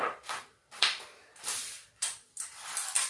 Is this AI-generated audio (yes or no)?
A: yes